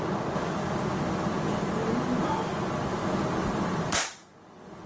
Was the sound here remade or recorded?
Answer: recorded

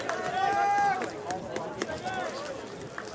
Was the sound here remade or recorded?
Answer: recorded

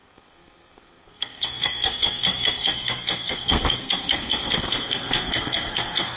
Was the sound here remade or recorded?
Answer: remade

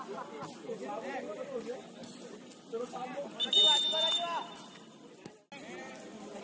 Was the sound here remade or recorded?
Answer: recorded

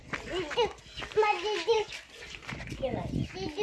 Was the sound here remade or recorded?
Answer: recorded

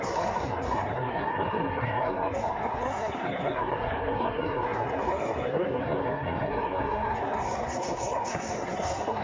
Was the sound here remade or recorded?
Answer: remade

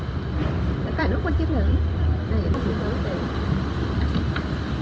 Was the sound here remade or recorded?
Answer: remade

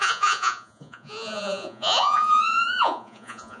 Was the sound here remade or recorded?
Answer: remade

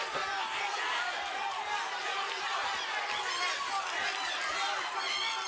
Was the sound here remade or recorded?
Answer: recorded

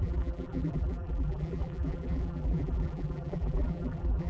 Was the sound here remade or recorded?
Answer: remade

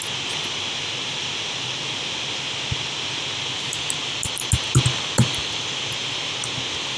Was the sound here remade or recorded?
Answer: recorded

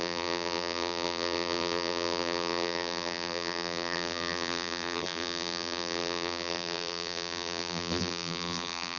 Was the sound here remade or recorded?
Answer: remade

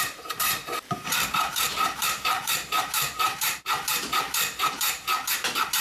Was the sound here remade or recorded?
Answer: remade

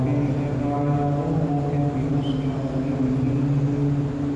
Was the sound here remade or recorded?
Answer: recorded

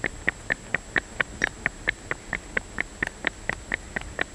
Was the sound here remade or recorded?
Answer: recorded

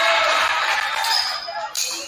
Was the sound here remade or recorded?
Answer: recorded